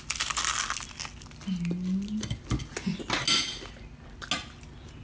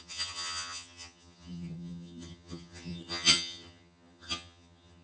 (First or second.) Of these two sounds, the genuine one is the first